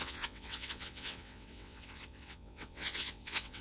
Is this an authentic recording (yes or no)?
no